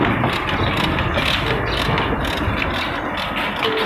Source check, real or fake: real